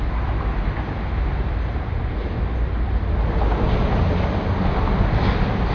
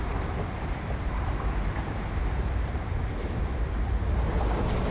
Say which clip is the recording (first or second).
first